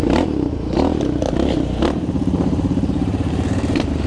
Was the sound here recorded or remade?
remade